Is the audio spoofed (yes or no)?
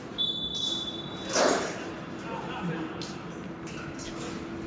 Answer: no